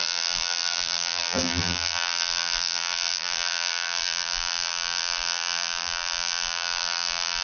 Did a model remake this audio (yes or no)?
yes